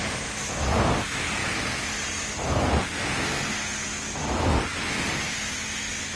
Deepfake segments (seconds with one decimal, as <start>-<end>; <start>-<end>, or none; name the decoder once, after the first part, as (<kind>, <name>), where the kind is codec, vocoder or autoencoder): none